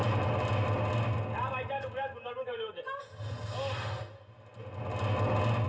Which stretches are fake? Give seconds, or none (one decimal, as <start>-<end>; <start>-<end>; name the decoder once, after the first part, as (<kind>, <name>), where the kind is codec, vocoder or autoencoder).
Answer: none